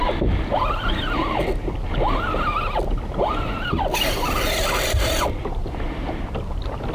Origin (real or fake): real